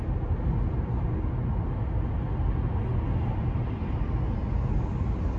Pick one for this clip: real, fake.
real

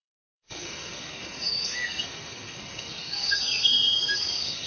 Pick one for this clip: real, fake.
fake